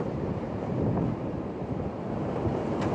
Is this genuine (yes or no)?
no